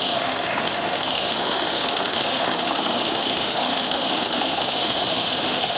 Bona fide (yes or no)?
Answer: no